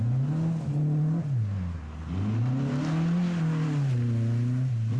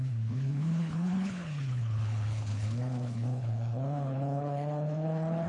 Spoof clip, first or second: second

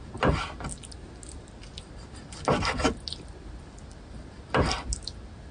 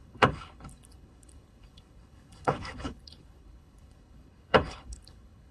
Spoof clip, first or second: second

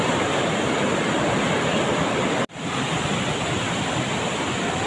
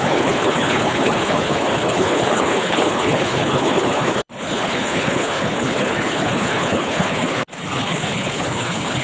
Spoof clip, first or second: second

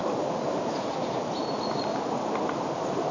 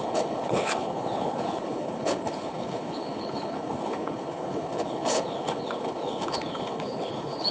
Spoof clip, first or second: second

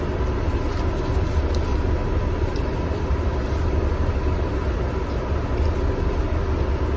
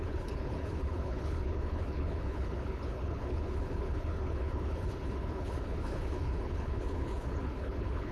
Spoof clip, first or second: second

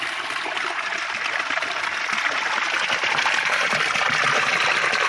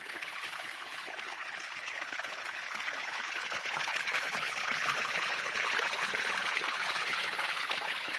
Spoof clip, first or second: second